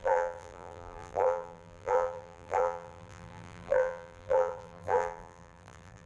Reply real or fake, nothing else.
fake